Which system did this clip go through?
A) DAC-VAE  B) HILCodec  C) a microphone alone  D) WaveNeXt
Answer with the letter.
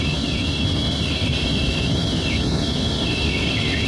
C